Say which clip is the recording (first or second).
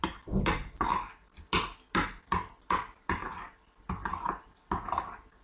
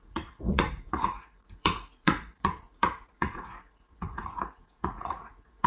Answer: first